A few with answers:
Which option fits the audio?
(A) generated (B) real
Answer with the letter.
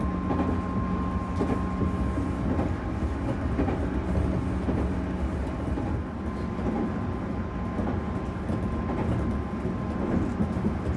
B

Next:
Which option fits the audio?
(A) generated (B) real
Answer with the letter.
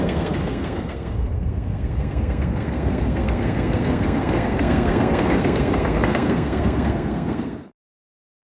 A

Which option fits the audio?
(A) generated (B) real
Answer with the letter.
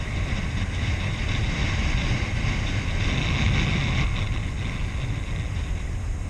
B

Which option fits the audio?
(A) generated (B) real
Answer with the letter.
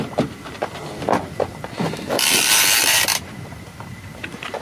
A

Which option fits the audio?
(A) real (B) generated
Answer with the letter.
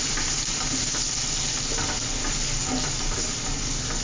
A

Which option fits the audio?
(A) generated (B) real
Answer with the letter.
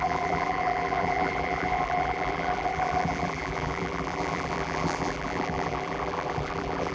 A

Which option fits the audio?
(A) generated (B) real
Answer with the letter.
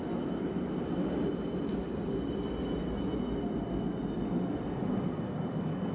B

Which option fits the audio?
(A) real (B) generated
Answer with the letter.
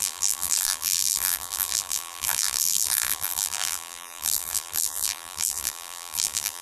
B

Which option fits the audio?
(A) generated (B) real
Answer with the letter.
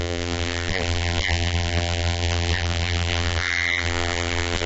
A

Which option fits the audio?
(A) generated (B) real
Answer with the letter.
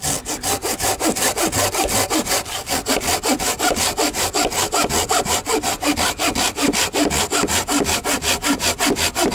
B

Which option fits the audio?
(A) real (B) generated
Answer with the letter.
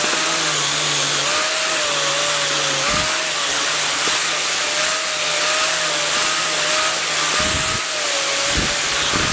A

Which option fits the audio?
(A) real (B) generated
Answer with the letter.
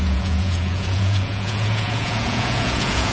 B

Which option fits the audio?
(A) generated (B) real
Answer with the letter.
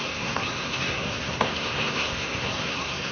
A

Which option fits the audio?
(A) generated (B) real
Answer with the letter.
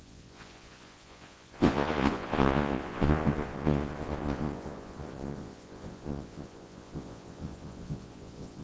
A